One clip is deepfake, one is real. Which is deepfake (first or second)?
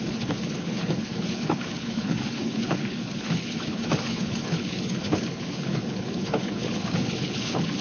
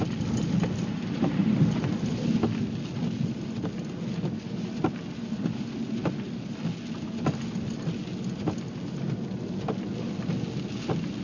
first